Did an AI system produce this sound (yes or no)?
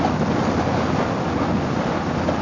no